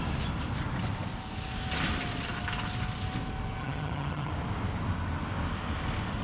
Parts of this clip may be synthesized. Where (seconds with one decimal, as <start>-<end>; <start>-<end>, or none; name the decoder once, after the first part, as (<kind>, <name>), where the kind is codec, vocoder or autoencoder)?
3.6-4.3 (vocoder, HiFi-GAN)